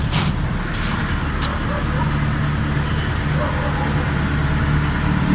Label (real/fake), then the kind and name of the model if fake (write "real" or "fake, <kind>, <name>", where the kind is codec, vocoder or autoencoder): real